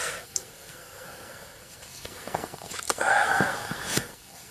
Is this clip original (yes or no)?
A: no